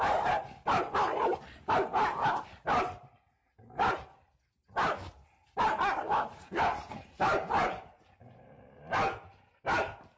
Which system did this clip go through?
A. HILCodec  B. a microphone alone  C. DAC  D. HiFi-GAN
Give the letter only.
B